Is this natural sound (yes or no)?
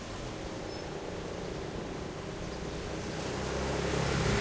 yes